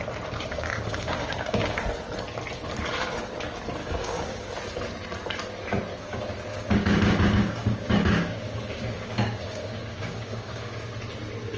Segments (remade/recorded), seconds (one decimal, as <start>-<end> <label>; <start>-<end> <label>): 0.0-0.5 recorded; 0.5-1.8 remade; 1.8-3.8 recorded; 3.8-4.5 remade; 4.5-6.5 recorded; 6.5-10.8 remade; 10.8-11.6 recorded